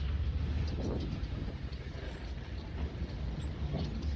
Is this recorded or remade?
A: recorded